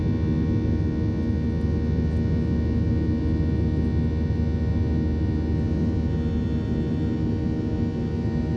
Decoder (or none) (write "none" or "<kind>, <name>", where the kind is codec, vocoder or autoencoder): none